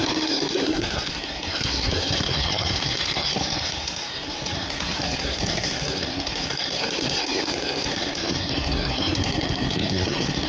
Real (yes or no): no